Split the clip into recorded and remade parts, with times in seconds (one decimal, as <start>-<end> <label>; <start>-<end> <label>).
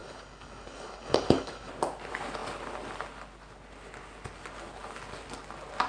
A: 0.0-1.7 remade; 1.7-5.9 recorded